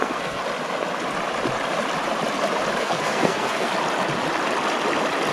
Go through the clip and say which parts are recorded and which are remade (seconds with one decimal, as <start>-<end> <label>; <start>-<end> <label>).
0.0-0.4 remade; 0.4-2.8 recorded; 2.8-3.7 remade; 3.7-5.3 recorded